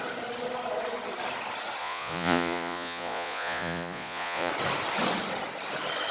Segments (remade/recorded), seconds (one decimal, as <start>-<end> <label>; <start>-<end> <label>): 0.0-1.8 recorded; 1.8-4.5 remade; 4.5-6.1 recorded